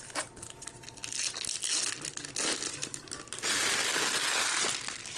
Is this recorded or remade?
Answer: recorded